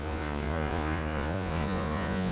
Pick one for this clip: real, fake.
fake